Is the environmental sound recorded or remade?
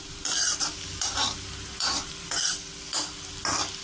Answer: remade